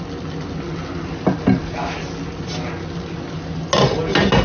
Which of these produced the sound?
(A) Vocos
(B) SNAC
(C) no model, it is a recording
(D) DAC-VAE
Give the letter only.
C